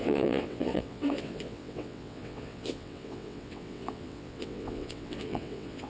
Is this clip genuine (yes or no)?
no